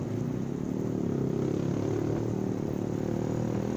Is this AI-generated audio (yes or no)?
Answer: no